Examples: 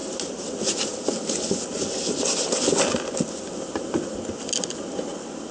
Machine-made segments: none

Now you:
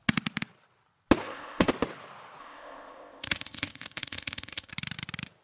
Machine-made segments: 1.2-1.7 (codec, ZipCodec); 2.4-4.7

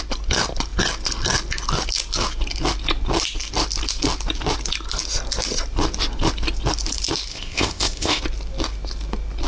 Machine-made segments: 7.3-8.2 (codec, ZipCodec)

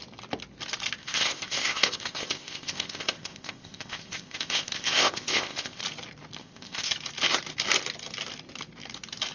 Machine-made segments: 1.0-5.8 (codec, ZipCodec); 6.4-6.9

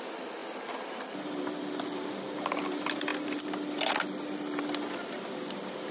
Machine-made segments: none